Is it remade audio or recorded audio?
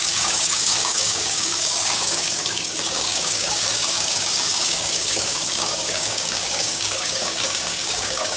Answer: remade